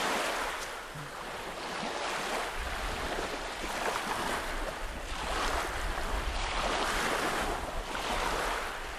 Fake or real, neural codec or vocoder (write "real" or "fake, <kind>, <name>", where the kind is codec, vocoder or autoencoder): real